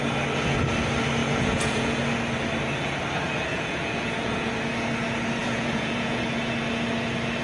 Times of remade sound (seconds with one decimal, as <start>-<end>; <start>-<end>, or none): 1.2-2.0; 3.5-4.6; 5.4-6.2